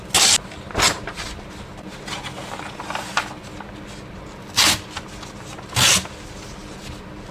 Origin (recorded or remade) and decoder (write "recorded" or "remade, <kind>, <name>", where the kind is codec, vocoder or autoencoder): recorded